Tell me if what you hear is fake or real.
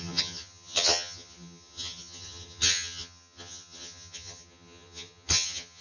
fake